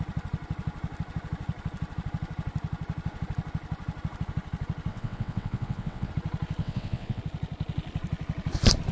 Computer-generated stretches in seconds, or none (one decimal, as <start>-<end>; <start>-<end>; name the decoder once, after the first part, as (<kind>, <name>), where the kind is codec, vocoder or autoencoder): 4.9-6.1 (vocoder, WaveNeXt); 6.6-7.2